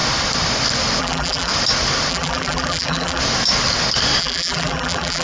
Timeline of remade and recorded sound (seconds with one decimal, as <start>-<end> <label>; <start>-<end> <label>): 0.0-1.0 recorded; 1.0-1.5 remade; 1.5-2.1 recorded; 2.1-3.2 remade; 3.2-4.2 recorded; 4.2-5.2 remade